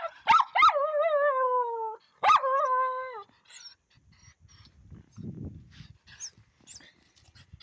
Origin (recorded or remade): recorded